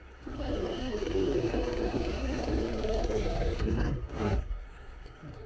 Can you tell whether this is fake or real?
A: fake